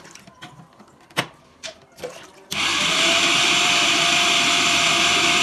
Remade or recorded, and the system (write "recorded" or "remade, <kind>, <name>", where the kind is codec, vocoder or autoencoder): remade, vocoder, BigVGAN v2